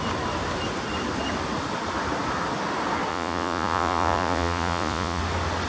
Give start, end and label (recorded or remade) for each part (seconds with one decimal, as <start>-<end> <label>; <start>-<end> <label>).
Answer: 0.0-3.1 recorded; 3.1-5.2 remade; 5.2-5.7 recorded